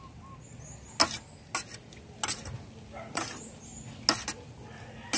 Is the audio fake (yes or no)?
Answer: no